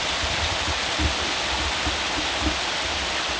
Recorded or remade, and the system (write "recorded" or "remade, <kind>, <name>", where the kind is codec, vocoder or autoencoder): recorded